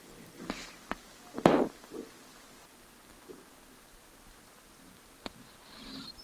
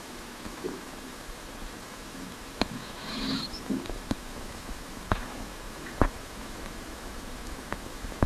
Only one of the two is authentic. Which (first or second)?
first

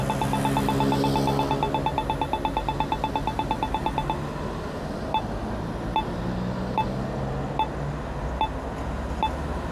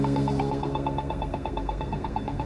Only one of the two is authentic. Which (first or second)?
first